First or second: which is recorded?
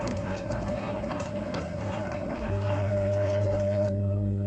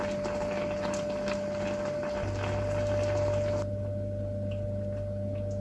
second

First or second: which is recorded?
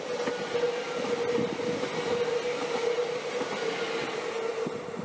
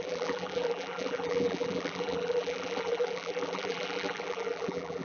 first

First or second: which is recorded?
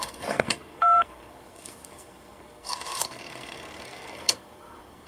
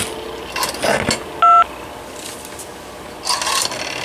second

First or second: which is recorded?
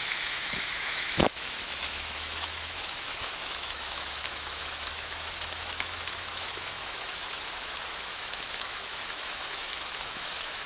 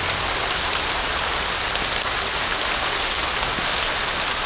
second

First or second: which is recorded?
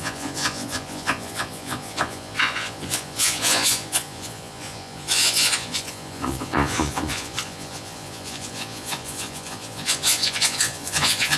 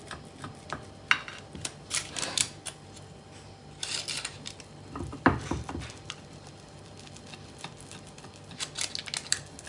second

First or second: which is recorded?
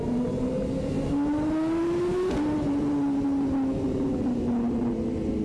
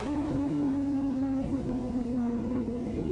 first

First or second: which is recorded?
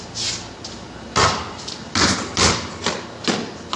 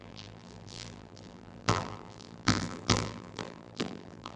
first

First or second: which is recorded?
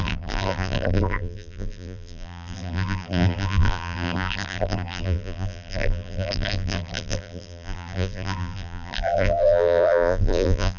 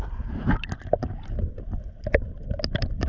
second